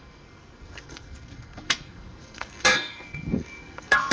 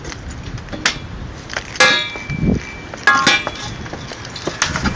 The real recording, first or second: second